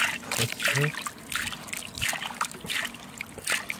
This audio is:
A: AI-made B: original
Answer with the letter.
B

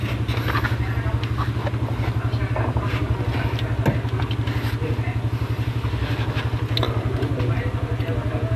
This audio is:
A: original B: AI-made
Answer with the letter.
A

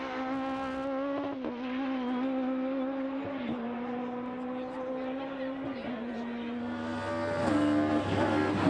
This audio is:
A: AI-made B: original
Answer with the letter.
B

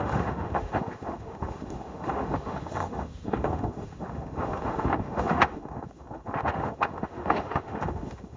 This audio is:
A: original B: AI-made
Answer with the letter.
B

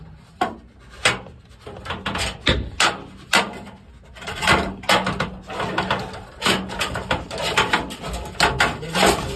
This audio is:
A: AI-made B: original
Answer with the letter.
B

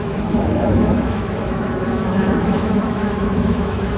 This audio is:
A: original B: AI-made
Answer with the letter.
B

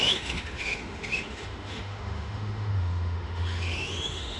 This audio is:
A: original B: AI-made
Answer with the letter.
B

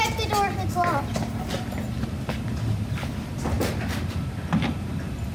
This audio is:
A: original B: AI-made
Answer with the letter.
A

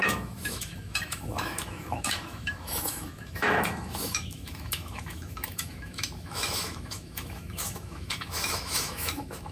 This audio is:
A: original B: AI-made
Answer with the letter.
B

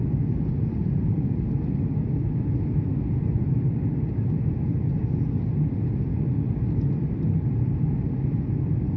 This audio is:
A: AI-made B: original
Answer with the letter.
B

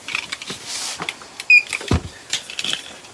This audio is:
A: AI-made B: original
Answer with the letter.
B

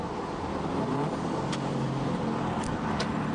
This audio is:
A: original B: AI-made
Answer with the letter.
A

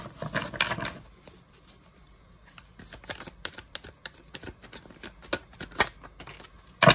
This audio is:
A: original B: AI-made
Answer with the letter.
A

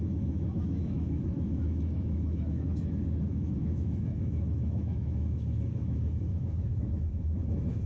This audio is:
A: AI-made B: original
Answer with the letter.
A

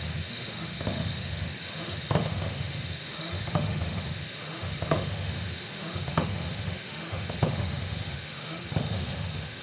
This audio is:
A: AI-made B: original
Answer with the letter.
A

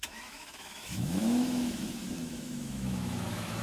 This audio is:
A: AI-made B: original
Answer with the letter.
A